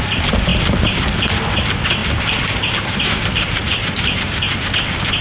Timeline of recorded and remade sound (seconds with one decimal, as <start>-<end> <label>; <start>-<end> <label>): 0.0-2.0 recorded; 2.0-4.7 remade; 4.7-5.2 recorded